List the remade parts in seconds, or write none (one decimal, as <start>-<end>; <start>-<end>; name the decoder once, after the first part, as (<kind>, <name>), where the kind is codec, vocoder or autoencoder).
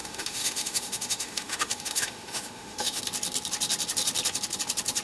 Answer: 0.0-3.0 (autoencoder, DAC-VAE)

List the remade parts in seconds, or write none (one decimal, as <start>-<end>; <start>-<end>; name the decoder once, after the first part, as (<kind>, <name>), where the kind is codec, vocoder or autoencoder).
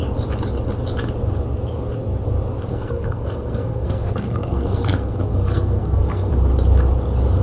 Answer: 2.7-6.3 (codec, SNAC)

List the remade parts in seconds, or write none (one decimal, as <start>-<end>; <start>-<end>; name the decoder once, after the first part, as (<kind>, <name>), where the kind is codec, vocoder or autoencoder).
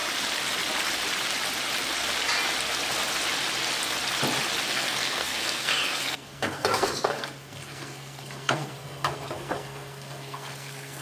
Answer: 4.7-11.0 (codec, SNAC)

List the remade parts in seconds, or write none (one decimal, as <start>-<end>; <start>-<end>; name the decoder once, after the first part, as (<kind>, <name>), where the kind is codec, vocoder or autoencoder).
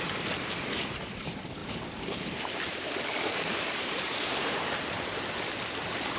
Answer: 1.6-5.2 (vocoder, BigVGAN v2)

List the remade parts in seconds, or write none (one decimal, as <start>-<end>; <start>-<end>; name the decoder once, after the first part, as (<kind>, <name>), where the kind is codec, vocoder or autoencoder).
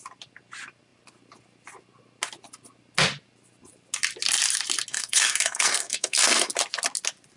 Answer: 4.9-6.5 (codec, SNAC)